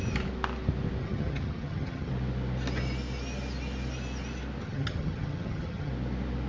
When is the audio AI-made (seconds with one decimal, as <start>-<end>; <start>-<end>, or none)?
1.0-2.1; 4.6-5.9